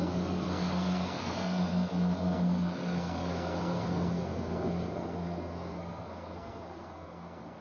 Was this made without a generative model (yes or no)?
no